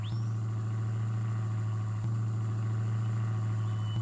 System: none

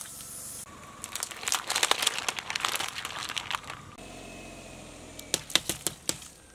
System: none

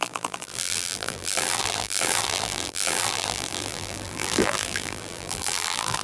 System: vocoder, BigVGAN v2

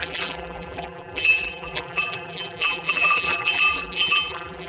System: vocoder, BigVGAN v2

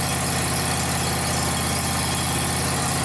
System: none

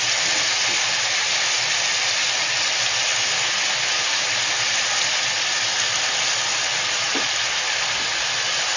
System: none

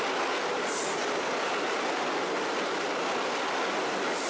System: none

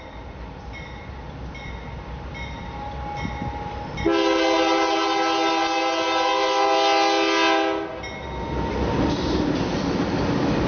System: none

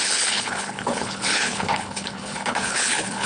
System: codec, HILCodec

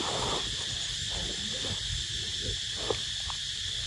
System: none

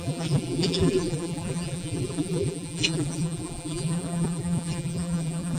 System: vocoder, BigVGAN v2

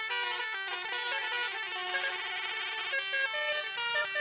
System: none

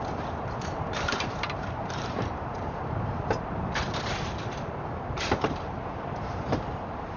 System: vocoder, BigVGAN v2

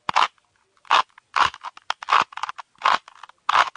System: none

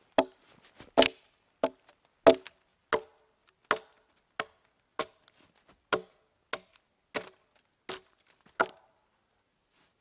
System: none